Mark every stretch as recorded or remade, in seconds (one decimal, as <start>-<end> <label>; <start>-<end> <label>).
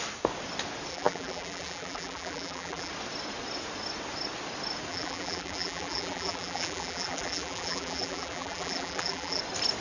0.0-0.9 recorded; 0.9-2.9 remade; 2.9-4.9 recorded; 4.9-9.4 remade; 9.4-9.8 recorded